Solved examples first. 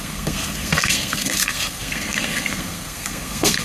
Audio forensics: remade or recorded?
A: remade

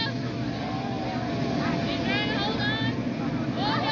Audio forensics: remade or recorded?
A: recorded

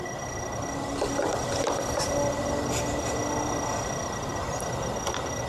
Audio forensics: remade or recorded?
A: recorded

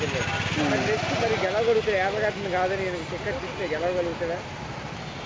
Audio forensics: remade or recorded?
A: recorded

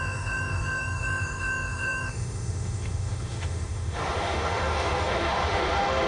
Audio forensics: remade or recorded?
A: remade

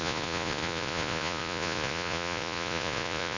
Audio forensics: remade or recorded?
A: remade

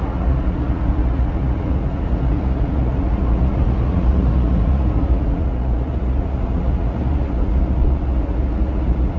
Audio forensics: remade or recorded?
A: remade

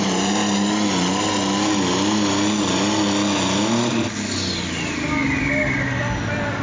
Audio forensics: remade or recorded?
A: recorded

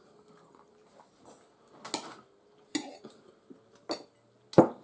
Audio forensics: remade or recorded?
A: recorded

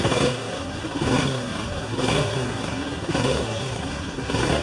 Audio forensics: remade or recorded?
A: remade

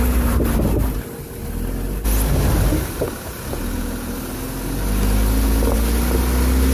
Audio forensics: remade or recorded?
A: recorded